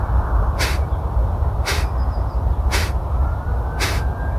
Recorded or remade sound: recorded